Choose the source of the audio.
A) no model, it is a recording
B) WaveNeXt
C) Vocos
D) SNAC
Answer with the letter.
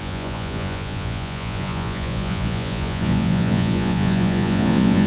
C